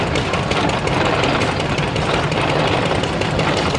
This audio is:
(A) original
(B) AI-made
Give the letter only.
A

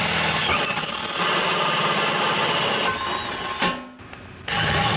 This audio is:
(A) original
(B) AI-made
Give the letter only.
A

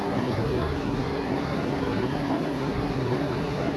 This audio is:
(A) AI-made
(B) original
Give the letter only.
A